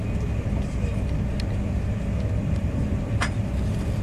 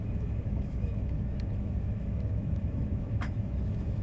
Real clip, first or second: first